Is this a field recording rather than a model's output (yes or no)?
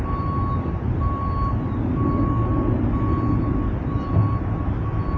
yes